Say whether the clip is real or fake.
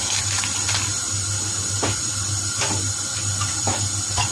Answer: real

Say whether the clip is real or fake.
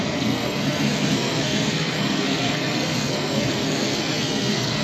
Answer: fake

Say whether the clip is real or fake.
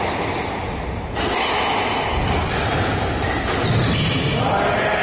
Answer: real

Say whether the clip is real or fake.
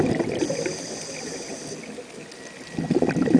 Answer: real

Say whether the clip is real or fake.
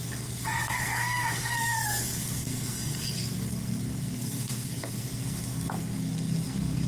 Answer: fake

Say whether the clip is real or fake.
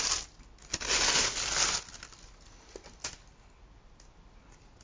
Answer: real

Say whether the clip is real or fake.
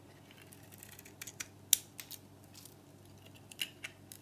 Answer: real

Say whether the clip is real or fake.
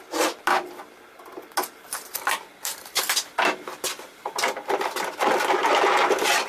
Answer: real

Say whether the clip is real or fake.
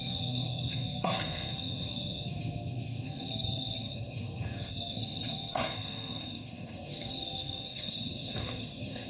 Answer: fake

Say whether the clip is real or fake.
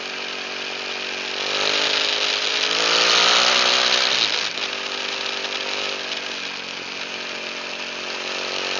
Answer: real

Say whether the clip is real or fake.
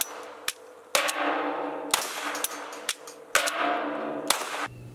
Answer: real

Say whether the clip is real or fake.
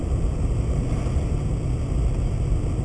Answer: real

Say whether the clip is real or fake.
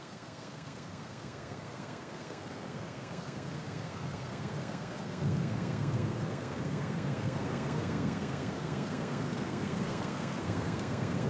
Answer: fake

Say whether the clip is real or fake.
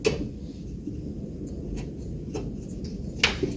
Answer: real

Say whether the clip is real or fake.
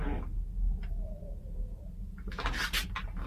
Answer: real